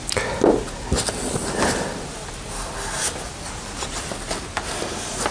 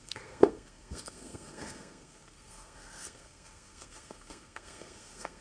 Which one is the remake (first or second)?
second